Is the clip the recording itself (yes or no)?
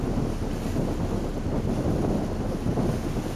yes